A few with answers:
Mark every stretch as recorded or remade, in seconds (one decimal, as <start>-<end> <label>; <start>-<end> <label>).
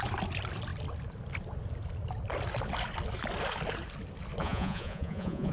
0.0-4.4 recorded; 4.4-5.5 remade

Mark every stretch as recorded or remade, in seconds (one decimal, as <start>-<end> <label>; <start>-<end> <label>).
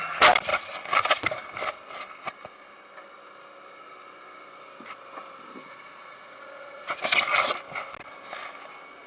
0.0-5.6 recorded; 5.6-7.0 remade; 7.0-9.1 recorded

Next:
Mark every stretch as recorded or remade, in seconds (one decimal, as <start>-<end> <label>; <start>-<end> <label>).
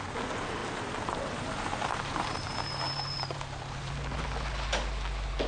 0.0-0.6 recorded; 0.6-3.9 remade; 3.9-5.5 recorded